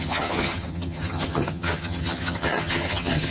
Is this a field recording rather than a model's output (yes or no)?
no